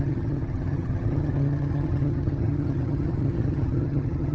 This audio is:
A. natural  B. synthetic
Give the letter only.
B